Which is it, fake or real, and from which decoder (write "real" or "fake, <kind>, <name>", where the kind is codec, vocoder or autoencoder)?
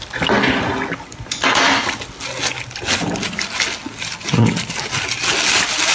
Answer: real